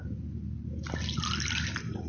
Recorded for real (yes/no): yes